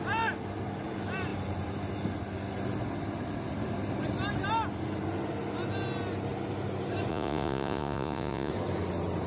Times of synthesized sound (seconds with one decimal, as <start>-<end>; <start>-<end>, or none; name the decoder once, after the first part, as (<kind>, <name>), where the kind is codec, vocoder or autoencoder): 7.1-8.5 (vocoder, Vocos)